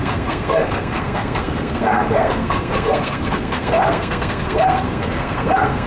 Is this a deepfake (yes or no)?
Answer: yes